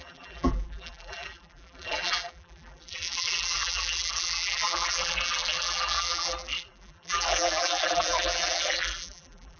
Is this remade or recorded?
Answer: remade